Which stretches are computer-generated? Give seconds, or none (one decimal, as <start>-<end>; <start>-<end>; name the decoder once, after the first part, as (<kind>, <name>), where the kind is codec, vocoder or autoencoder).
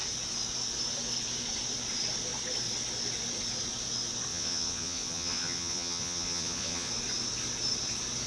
4.3-6.9 (vocoder, Vocos)